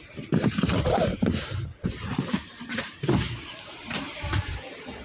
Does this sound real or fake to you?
fake